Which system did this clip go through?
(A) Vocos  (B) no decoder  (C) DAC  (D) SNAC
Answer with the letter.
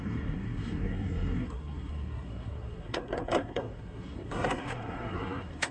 D